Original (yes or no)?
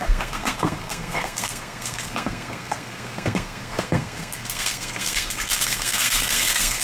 no